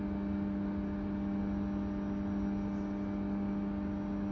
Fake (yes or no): no